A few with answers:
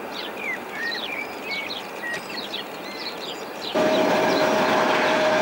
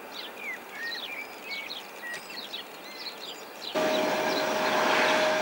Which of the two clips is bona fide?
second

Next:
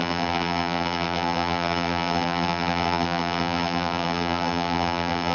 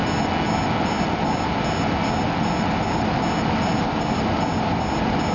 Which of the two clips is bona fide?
second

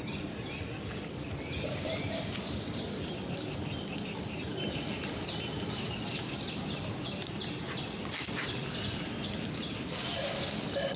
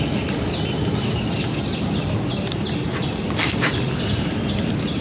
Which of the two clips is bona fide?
second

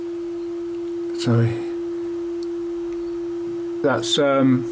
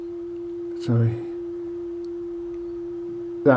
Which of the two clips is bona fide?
first